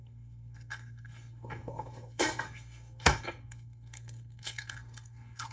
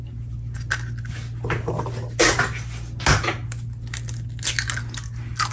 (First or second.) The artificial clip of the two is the first